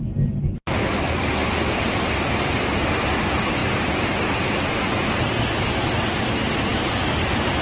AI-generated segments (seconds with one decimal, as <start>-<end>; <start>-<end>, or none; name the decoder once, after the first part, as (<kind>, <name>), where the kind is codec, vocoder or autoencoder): none